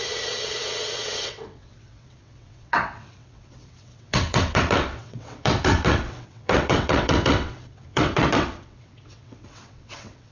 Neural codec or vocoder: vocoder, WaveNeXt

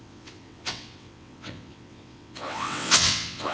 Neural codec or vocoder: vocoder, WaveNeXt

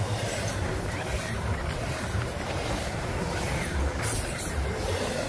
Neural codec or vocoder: none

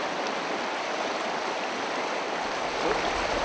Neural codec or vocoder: none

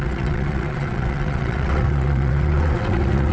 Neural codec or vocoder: vocoder, WaveNeXt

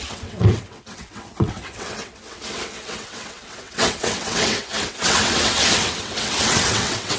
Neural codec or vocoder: vocoder, WaveNeXt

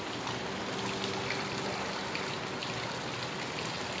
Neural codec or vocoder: none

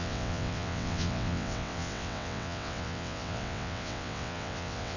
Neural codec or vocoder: vocoder, WaveNeXt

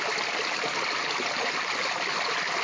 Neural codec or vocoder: none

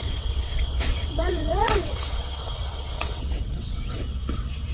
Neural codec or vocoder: vocoder, WaveNeXt